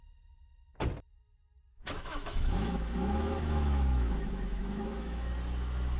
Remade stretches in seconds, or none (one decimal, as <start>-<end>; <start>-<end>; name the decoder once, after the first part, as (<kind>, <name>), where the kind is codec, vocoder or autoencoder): 1.7-5.3 (autoencoder, DAC-VAE)